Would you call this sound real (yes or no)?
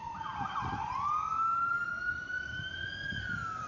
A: yes